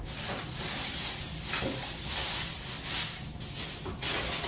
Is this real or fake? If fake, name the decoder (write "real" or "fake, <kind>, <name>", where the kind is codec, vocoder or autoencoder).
real